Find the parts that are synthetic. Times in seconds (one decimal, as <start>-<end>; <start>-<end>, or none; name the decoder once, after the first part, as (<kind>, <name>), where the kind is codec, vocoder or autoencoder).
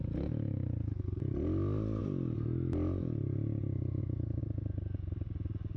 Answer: none